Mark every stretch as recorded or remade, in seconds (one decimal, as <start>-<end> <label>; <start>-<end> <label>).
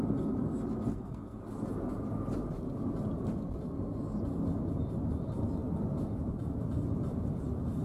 0.0-0.9 recorded; 0.9-1.4 remade; 1.4-7.8 recorded